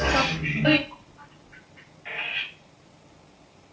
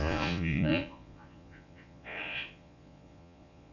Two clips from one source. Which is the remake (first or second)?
second